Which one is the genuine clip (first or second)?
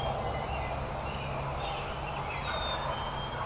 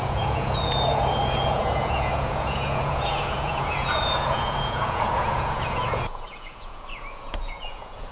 first